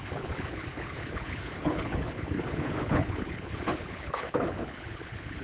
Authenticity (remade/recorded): remade